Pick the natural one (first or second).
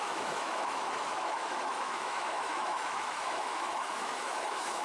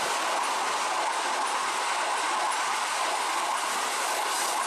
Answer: second